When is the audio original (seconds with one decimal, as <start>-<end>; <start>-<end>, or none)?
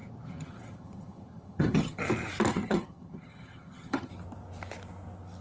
2.0-2.5; 4.1-5.4